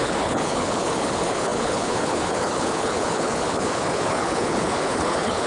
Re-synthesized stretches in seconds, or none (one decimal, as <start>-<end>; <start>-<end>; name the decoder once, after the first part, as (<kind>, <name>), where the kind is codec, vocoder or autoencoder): 0.0-5.5 (codec, HILCodec)